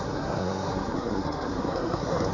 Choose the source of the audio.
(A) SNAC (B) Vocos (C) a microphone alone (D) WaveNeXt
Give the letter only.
A